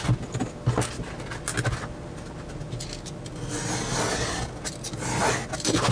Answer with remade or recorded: recorded